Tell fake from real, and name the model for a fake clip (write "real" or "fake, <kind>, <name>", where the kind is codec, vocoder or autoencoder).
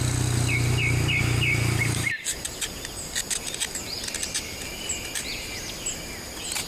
real